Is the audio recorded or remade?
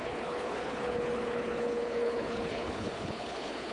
remade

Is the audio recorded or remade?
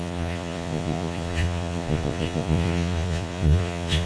remade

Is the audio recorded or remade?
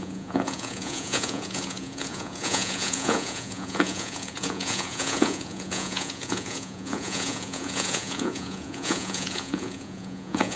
remade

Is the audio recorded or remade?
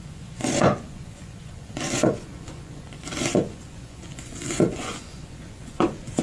remade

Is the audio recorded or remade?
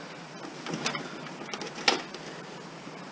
recorded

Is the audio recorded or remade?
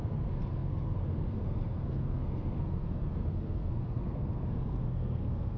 remade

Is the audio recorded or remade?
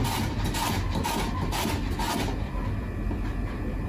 recorded